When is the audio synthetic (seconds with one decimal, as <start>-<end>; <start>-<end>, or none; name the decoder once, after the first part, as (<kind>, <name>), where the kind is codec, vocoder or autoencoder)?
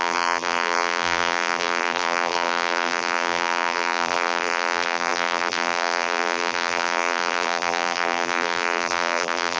0.0-9.6 (vocoder, BigVGAN v2)